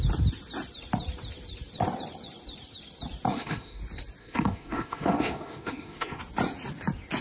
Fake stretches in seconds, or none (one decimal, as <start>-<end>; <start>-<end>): 3.3-3.8; 4.2-6.2